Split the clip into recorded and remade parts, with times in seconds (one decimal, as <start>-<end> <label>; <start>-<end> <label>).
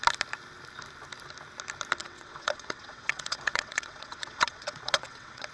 0.0-2.0 recorded; 2.0-5.5 remade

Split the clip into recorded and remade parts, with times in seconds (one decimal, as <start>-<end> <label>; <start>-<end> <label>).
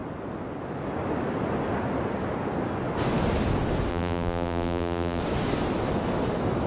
0.0-3.9 recorded; 3.9-5.2 remade; 5.2-6.7 recorded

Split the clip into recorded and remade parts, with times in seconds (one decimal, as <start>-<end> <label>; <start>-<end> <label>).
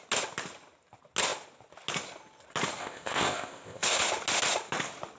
0.0-2.8 recorded; 2.8-4.0 remade; 4.0-5.2 recorded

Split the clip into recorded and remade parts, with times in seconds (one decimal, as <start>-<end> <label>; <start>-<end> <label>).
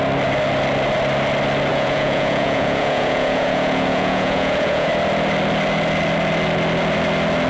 0.0-1.7 recorded; 1.7-4.9 remade; 4.9-7.5 recorded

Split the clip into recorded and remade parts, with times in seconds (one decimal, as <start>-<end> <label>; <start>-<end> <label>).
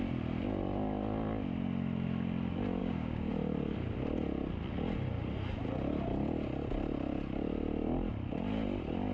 0.0-2.8 recorded; 2.8-3.3 remade; 3.3-9.1 recorded